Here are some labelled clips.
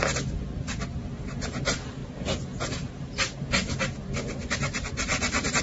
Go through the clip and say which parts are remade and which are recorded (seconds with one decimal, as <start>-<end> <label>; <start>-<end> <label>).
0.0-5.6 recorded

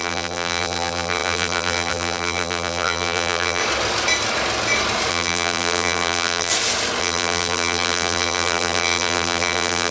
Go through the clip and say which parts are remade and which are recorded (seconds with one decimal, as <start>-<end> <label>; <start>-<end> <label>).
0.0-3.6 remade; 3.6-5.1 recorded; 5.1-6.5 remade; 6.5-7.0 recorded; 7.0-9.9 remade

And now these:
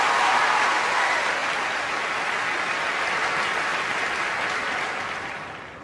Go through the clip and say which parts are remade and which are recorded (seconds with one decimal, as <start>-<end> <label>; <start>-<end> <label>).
0.0-1.4 recorded; 1.4-2.1 remade; 2.1-5.8 recorded